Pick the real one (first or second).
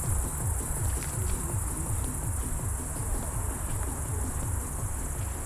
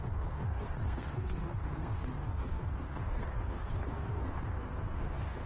first